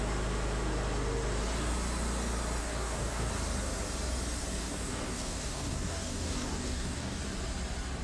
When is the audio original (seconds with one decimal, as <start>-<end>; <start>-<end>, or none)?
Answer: 0.0-2.6; 3.3-4.6; 7.2-8.0